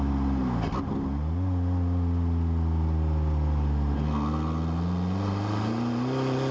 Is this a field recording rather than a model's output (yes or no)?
yes